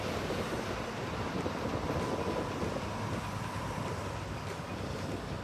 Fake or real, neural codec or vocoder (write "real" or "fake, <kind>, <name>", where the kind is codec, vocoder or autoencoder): real